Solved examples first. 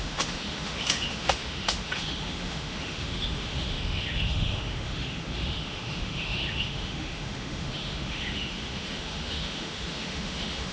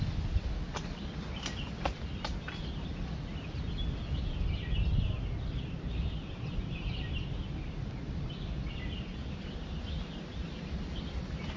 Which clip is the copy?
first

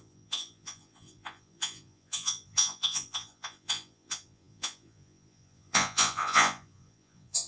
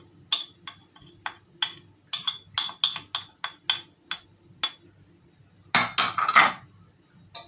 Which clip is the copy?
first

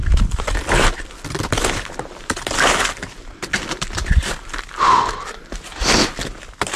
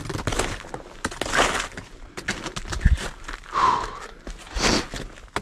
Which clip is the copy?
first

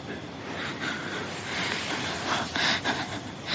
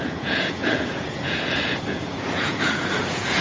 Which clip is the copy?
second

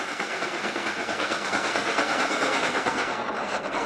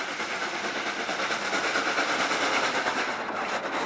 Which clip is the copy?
first